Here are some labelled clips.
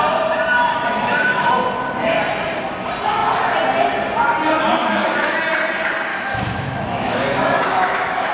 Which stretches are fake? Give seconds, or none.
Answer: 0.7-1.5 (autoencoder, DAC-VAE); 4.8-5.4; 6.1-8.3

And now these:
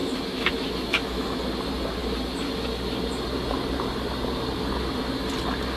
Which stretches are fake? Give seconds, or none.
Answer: 0.0-1.4 (autoencoder, DAC-VAE)

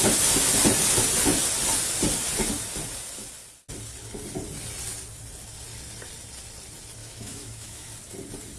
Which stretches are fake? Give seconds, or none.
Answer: 7.0-7.9 (autoencoder, DAC-VAE)

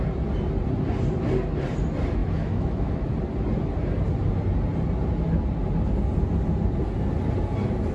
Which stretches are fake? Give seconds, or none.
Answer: 2.2-3.1 (autoencoder, DAC-VAE)

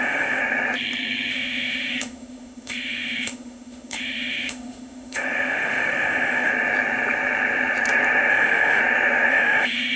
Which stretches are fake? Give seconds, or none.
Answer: 0.0-0.4 (autoencoder, DAC-VAE); 1.3-6.5; 8.3-8.8; 9.3-10.0

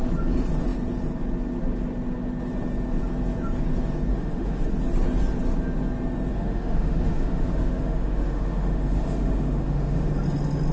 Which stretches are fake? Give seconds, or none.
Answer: 4.1-4.8 (autoencoder, DAC-VAE); 6.3-10.1

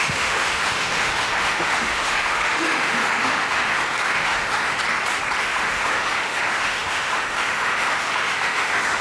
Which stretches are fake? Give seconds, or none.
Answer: 0.0-4.8 (autoencoder, DAC-VAE); 5.4-9.0